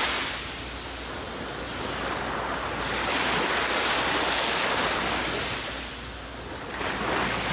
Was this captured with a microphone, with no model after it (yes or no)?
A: yes